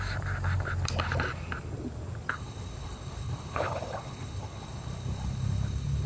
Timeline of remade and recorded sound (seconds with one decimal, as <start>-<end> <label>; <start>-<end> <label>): 0.0-2.3 recorded; 2.3-6.1 remade